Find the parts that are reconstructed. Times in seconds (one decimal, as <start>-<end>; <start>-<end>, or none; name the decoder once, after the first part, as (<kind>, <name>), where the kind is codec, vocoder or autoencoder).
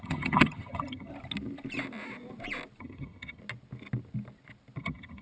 0.0-1.1 (vocoder, HiFi-GAN); 2.8-3.4; 4.8-5.2